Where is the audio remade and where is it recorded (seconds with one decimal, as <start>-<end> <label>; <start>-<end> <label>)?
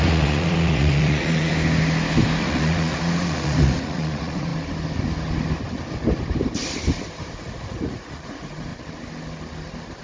0.0-1.5 remade; 1.5-2.4 recorded; 2.4-4.5 remade; 4.5-7.3 recorded; 7.3-8.7 remade; 8.7-10.0 recorded